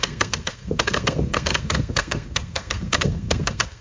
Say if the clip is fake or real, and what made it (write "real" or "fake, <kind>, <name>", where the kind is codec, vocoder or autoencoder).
fake, codec, SNAC